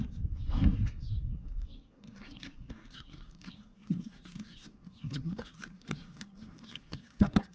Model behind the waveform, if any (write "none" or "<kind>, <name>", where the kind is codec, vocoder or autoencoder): codec, SNAC